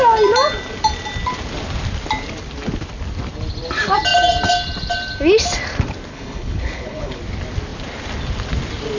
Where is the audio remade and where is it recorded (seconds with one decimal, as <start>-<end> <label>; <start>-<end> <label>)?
0.0-6.1 recorded; 6.1-7.2 remade; 7.2-9.0 recorded